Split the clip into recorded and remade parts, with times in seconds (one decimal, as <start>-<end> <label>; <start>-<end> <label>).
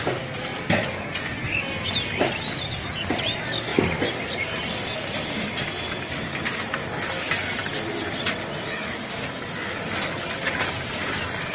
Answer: 0.0-11.5 recorded